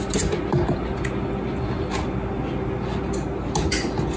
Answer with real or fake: real